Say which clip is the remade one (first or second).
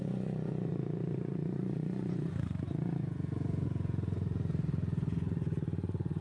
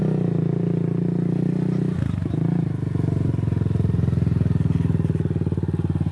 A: first